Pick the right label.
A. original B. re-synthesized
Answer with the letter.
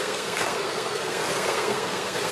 B